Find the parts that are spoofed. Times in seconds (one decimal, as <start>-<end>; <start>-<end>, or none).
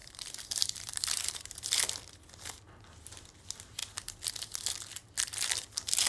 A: 0.0-2.4